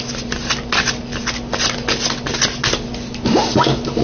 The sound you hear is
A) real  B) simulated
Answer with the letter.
A